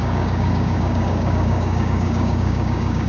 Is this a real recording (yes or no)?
no